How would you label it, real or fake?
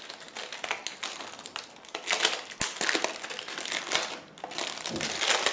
real